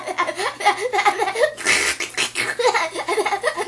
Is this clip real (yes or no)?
yes